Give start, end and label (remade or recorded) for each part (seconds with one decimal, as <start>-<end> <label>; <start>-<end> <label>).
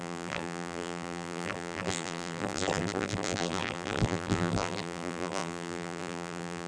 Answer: 0.0-6.7 remade